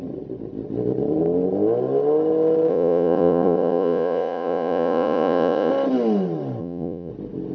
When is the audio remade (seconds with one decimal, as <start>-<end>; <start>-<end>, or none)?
2.7-5.7; 6.6-7.1